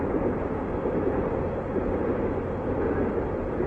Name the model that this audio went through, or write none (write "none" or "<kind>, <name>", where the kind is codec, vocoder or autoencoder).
none